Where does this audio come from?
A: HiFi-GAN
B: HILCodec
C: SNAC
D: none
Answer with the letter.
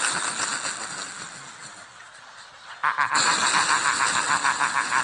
D